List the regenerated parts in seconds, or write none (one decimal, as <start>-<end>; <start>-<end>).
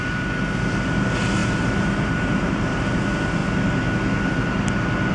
1.4-3.0